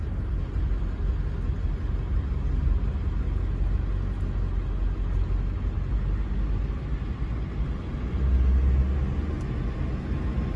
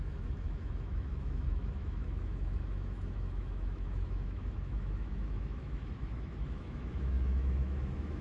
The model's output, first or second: second